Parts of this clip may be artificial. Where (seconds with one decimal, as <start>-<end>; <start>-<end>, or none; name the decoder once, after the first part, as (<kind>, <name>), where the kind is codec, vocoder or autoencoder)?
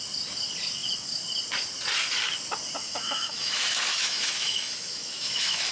2.8-5.7 (autoencoder, DAC-VAE)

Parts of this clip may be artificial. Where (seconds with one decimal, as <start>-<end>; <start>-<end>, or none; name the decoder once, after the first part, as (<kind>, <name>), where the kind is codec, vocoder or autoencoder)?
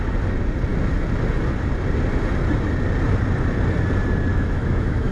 4.3-5.1 (autoencoder, DAC-VAE)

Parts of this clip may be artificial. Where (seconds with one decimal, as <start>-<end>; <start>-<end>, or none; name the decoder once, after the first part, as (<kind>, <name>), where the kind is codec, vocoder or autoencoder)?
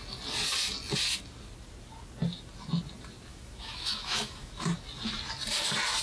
3.3-4.5 (autoencoder, DAC-VAE)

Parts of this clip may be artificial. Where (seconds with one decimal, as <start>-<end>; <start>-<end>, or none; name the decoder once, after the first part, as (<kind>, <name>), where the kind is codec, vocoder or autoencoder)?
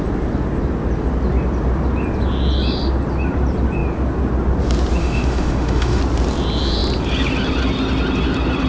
5.0-6.0 (autoencoder, DAC-VAE)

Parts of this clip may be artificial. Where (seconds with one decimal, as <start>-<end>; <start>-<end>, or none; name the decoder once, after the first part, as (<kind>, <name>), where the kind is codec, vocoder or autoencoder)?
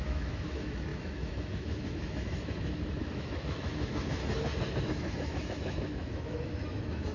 0.0-4.2 (autoencoder, DAC-VAE); 4.8-7.1